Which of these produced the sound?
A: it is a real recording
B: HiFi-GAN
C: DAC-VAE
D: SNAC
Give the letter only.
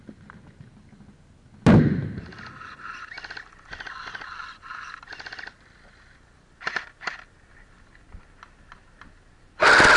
A